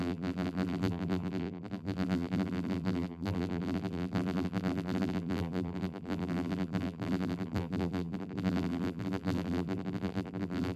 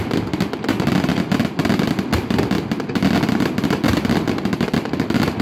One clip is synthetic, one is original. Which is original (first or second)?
second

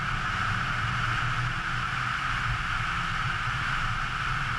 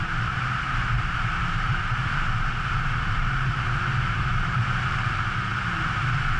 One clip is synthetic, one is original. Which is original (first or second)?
first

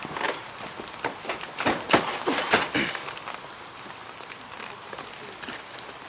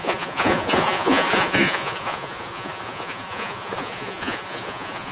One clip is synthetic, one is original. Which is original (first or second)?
first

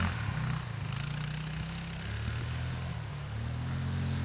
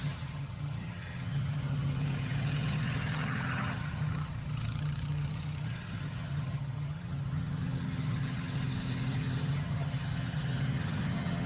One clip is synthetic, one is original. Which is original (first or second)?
first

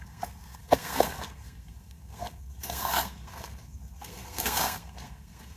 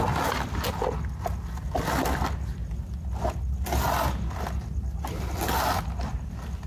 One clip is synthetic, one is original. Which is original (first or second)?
second